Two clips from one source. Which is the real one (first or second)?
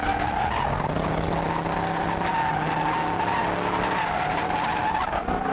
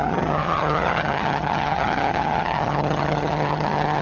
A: first